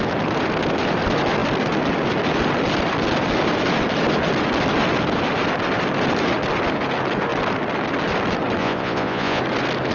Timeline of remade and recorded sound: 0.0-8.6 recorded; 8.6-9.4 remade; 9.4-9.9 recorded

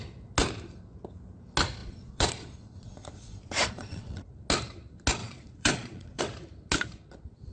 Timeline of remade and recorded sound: 0.0-1.8 recorded; 1.8-4.3 remade; 4.3-5.2 recorded; 5.2-6.2 remade; 6.2-7.5 recorded

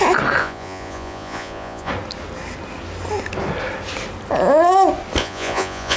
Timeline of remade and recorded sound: 0.0-0.4 recorded; 0.4-1.9 remade; 1.9-5.2 recorded; 5.2-6.0 remade

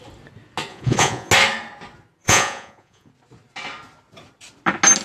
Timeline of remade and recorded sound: 0.0-0.7 recorded; 0.7-1.3 remade; 1.3-2.2 recorded; 2.2-3.1 remade; 3.1-5.0 recorded

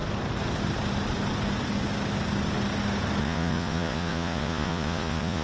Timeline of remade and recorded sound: 0.0-3.2 recorded; 3.2-5.4 remade